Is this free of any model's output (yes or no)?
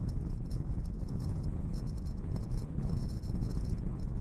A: no